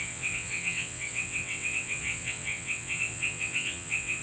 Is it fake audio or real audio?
fake